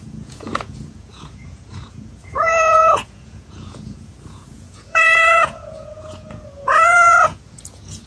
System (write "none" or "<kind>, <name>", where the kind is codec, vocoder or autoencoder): vocoder, Vocos